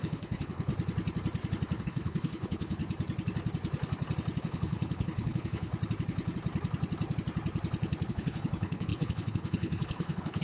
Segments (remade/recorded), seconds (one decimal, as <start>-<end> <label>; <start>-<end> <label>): 0.0-0.7 remade; 0.7-1.8 recorded; 1.8-2.8 remade; 2.8-4.4 recorded; 4.4-5.7 remade; 5.7-8.1 recorded; 8.1-10.4 remade